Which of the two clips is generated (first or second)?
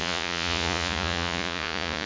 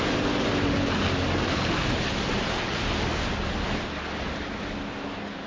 first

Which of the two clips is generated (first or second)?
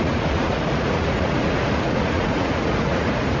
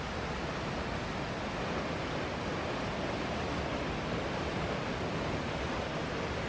first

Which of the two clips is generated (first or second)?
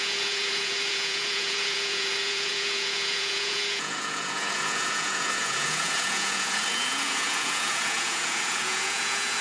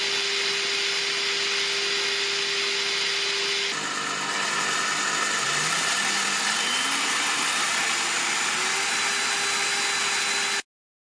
first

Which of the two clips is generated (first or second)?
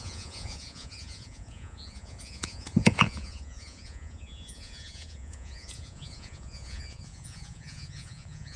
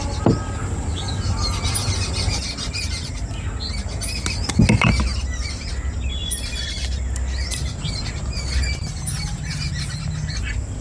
first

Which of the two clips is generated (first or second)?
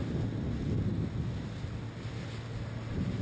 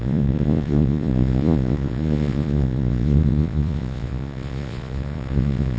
second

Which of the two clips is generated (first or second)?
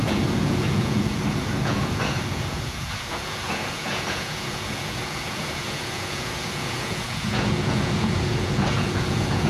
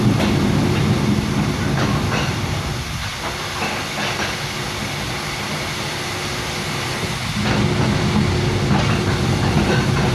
first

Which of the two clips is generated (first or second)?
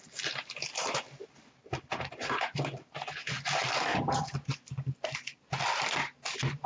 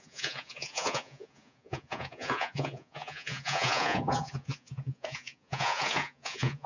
second